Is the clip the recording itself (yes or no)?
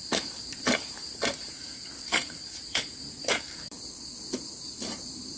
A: no